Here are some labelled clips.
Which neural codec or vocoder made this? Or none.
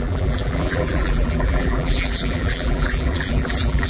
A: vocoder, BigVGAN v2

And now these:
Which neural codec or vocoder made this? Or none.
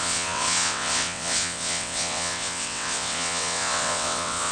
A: vocoder, WaveNeXt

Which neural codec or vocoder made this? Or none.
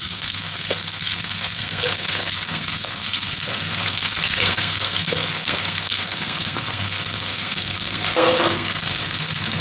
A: codec, SNAC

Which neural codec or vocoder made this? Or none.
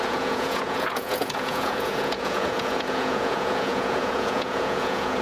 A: vocoder, Vocos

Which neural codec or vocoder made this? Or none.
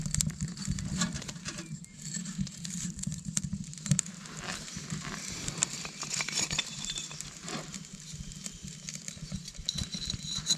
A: vocoder, BigVGAN v2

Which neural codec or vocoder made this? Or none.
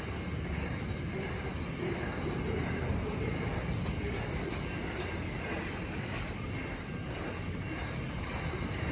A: none